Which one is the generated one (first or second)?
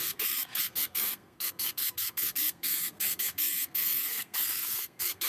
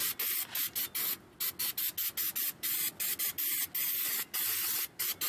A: first